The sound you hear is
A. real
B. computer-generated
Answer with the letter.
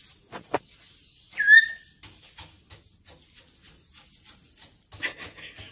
A